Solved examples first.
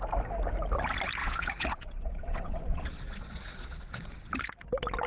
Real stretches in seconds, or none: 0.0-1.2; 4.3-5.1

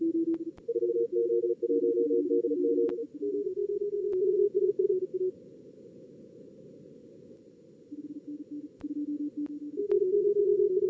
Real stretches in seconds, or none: 0.0-10.9

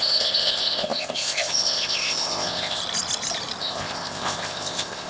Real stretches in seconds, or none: 2.8-3.6

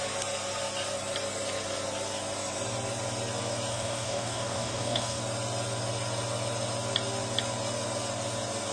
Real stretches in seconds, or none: 0.0-3.7; 5.2-8.7

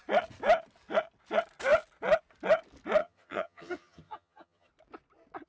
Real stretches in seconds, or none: 0.0-3.0; 4.7-5.5

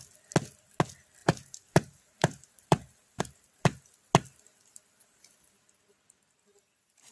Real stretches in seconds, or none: 0.0-1.2; 3.2-7.1